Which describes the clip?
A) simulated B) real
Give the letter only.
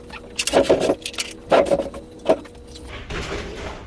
B